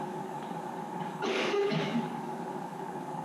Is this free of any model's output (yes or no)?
no